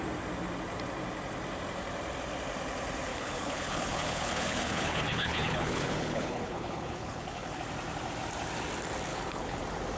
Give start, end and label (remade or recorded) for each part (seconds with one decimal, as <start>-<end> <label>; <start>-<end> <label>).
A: 0.0-3.1 recorded; 3.1-7.6 remade; 7.6-9.1 recorded; 9.1-9.6 remade; 9.6-10.0 recorded